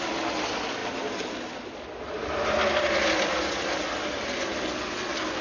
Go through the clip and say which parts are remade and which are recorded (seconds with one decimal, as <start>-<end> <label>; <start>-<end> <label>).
0.0-5.4 recorded